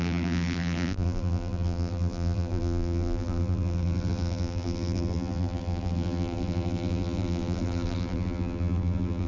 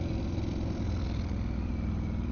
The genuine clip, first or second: second